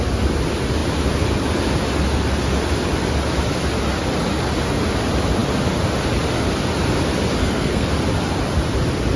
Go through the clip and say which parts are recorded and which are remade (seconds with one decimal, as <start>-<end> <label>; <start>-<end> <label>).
0.0-7.4 recorded; 7.4-7.9 remade; 7.9-9.2 recorded